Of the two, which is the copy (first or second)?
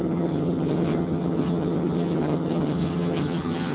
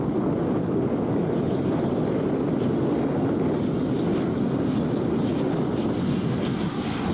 first